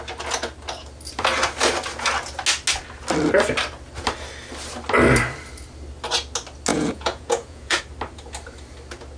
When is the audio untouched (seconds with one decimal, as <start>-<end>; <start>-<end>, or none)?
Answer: 0.0-6.7; 7.8-9.2